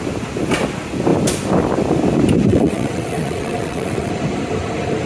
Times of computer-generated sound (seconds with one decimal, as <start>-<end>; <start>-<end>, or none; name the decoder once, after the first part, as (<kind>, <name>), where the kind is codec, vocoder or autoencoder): 2.5-4.1 (vocoder, WaveNeXt)